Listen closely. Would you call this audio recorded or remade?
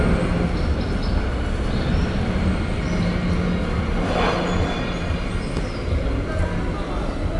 recorded